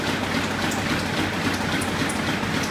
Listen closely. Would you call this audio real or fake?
real